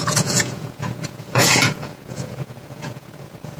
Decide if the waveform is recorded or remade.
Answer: remade